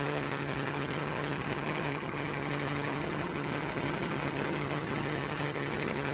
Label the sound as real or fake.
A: fake